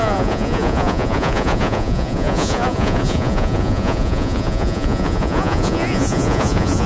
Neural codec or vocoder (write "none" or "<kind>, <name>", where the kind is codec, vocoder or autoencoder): vocoder, Vocos